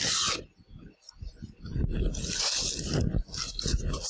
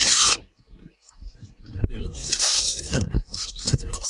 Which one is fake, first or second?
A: second